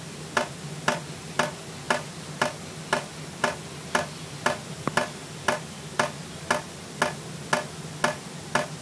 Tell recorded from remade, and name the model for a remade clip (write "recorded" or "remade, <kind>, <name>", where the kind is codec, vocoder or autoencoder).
recorded